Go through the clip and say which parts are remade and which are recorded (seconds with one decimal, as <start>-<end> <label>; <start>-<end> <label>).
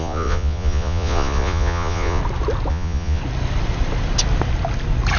0.0-2.2 remade; 2.2-2.7 recorded; 2.7-3.2 remade; 3.2-5.2 recorded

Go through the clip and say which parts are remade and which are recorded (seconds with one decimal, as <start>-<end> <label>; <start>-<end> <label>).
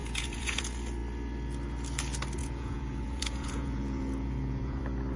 0.0-0.6 remade; 0.6-2.4 recorded; 2.4-4.8 remade; 4.8-5.2 recorded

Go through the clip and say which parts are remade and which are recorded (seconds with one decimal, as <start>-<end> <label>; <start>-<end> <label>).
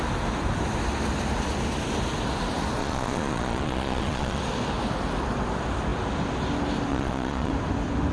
0.0-2.8 recorded; 2.8-4.4 remade; 4.4-6.9 recorded; 6.9-7.5 remade; 7.5-8.1 recorded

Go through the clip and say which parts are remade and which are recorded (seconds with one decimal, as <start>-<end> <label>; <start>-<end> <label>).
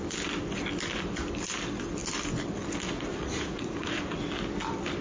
0.0-3.1 recorded; 3.1-4.0 remade; 4.0-5.0 recorded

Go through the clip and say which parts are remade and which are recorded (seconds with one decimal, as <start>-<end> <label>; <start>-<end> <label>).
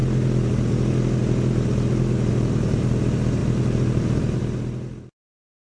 0.0-5.7 recorded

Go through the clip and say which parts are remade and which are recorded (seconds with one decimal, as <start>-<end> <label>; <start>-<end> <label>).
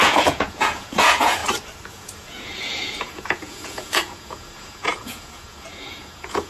0.0-1.4 remade; 1.4-1.9 recorded; 1.9-6.5 remade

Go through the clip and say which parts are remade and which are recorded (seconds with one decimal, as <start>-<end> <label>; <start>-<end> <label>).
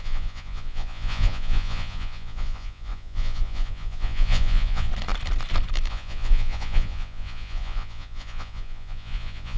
0.0-4.9 remade; 4.9-5.9 recorded; 5.9-9.6 remade